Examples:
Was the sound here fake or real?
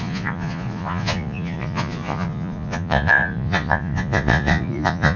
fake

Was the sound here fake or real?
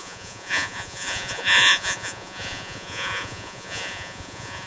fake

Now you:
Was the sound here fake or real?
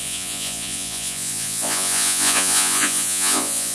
fake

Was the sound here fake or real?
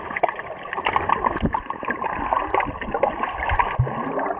real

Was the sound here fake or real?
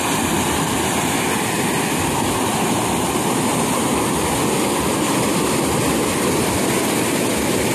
real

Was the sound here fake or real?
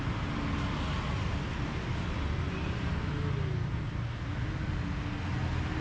real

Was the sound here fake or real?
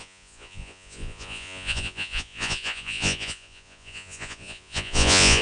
fake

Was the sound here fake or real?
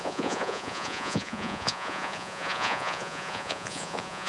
fake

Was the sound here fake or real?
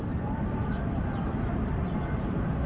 real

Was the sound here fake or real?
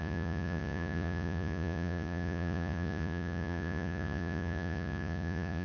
fake